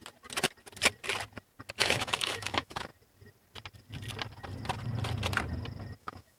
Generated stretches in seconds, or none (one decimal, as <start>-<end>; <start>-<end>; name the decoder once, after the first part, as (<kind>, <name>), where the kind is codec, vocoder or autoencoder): 1.8-2.9 (autoencoder, DAC-VAE); 6.0-6.4